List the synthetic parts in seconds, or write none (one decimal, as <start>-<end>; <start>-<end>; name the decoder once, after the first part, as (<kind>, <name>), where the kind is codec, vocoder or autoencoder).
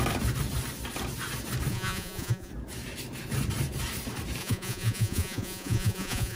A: 1.7-2.5 (vocoder, Vocos); 4.4-6.4